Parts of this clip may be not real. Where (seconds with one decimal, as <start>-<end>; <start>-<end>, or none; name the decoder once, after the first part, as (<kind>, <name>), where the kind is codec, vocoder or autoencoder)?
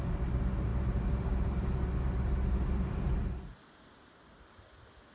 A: none